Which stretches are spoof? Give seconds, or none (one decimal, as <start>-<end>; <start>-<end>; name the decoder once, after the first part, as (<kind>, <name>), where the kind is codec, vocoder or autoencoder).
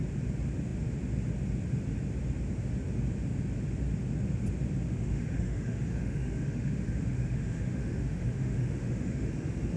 4.9-9.3 (autoencoder, DAC-VAE)